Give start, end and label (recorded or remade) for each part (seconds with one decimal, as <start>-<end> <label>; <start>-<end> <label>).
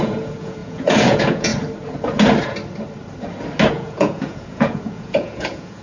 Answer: 0.0-1.5 remade; 1.5-3.7 recorded; 3.7-5.8 remade